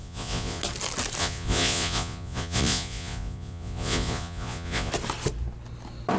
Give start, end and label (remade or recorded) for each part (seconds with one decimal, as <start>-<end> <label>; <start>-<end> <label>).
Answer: 0.0-0.6 remade; 0.6-1.2 recorded; 1.2-4.9 remade; 4.9-6.2 recorded